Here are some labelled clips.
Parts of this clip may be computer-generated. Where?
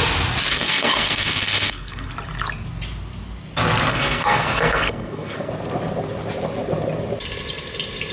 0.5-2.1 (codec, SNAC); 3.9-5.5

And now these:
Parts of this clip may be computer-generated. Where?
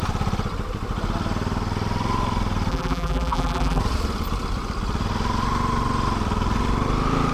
2.7-3.8 (vocoder, BigVGAN v2)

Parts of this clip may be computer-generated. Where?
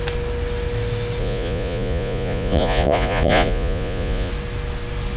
1.2-4.3 (vocoder, Vocos)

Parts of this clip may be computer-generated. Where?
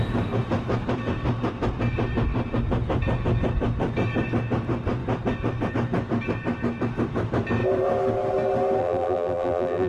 8.8-9.9 (vocoder, BigVGAN v2)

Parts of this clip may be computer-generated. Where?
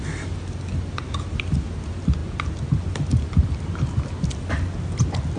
none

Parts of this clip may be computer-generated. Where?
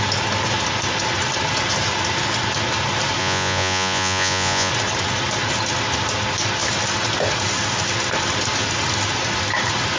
3.2-4.7 (vocoder, Vocos)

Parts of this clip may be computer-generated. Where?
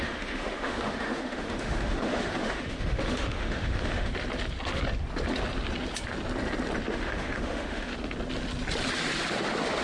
0.0-4.1 (autoencoder, DAC-VAE); 6.9-7.9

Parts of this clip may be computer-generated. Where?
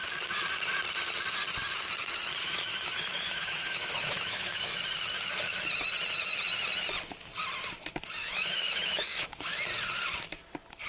2.4-4.8 (autoencoder, DAC-VAE); 8.2-9.6